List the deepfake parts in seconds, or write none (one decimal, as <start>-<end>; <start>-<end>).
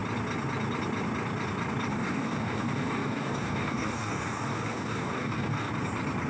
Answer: 1.9-5.7